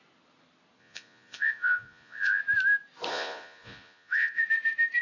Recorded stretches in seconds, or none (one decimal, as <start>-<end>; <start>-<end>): 0.0-0.8; 2.4-3.1; 4.4-5.0